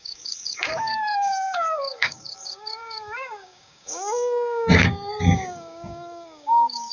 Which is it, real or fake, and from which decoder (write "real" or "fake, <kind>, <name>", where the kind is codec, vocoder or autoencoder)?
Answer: fake, codec, DAC